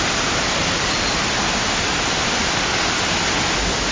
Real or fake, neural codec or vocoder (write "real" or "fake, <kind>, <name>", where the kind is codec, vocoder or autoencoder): real